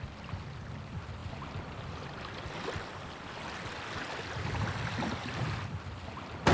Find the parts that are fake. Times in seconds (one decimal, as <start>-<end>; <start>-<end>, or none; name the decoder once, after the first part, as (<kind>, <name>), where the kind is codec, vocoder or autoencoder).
none